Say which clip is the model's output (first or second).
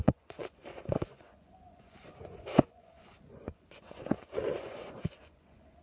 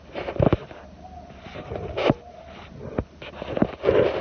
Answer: first